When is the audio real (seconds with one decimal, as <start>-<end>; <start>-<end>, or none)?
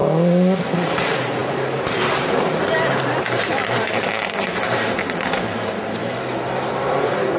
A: 0.0-0.6; 6.0-6.7